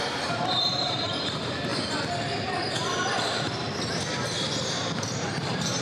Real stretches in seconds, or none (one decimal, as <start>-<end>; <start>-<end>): 1.7-5.2